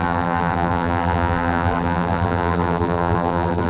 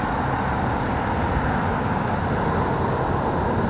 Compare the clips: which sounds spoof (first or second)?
first